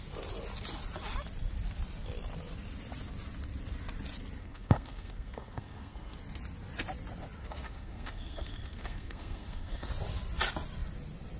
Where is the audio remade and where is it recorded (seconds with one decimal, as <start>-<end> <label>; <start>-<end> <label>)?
0.0-4.4 recorded; 4.4-6.2 remade; 6.2-7.4 recorded; 7.4-9.9 remade; 9.9-11.4 recorded